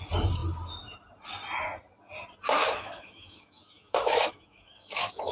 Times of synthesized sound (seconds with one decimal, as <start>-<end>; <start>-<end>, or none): 2.6-5.3